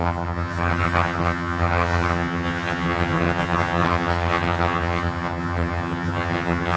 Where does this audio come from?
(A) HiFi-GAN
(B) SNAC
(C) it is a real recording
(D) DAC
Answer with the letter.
A